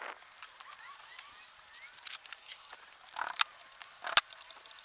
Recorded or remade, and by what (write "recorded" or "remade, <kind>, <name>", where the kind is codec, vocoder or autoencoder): recorded